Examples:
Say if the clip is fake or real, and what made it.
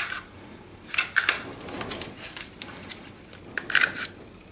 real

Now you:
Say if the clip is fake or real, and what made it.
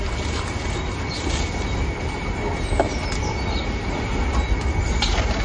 real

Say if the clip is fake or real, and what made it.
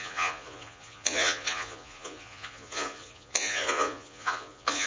fake, vocoder, Vocos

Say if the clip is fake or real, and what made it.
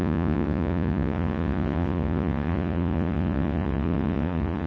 fake, vocoder, Vocos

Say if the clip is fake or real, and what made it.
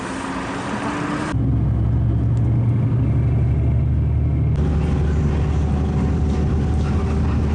real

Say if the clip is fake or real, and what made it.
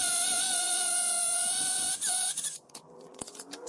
fake, vocoder, Vocos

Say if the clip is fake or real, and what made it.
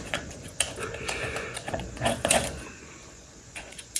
fake, vocoder, Vocos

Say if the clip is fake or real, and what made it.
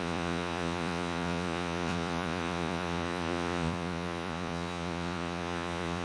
fake, vocoder, Vocos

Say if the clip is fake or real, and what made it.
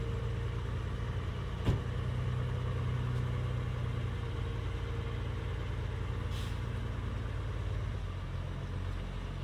real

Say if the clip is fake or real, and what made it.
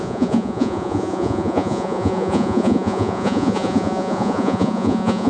fake, vocoder, Vocos